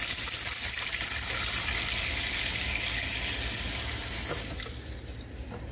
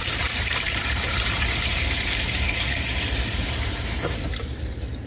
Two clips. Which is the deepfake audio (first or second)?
second